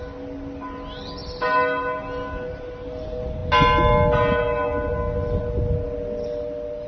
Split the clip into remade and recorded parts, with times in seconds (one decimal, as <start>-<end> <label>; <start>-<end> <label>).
0.0-6.9 recorded